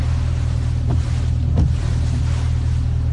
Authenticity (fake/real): real